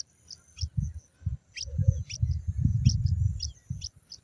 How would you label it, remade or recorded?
recorded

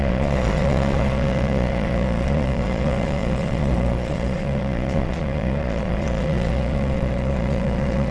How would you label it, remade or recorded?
remade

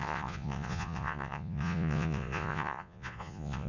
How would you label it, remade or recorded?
remade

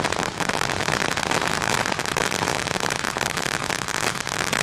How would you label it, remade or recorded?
remade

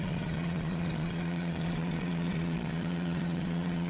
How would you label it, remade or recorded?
remade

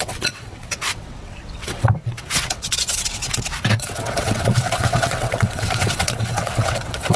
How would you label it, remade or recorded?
remade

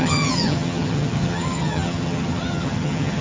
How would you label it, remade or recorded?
remade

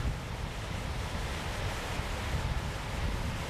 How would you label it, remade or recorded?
recorded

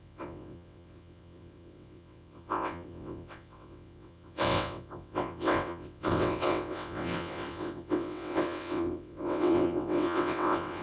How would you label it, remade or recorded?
remade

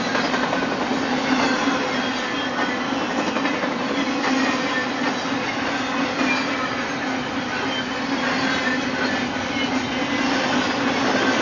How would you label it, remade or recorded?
recorded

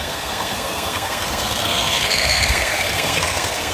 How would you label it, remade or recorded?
remade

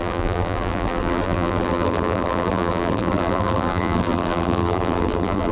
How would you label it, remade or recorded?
remade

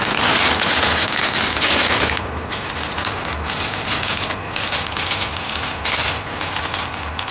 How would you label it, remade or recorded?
recorded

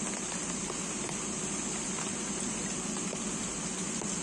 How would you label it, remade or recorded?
recorded